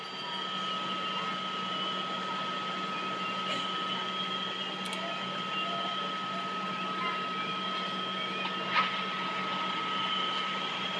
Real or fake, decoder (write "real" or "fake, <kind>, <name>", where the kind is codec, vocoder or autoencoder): real